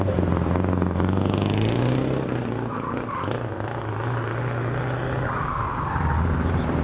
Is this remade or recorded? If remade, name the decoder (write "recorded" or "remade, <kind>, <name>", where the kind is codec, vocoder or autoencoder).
recorded